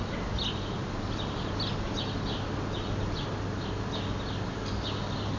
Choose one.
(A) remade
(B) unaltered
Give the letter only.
B